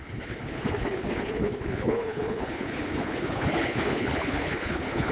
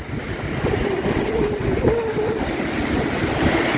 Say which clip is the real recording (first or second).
second